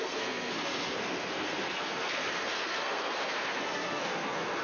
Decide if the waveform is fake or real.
fake